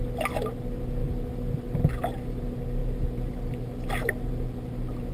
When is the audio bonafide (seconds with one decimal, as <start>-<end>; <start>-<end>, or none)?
0.0-5.1